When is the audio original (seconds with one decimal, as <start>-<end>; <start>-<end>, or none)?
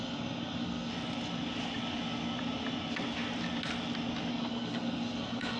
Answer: 0.9-4.3